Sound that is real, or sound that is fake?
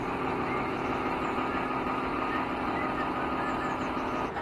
real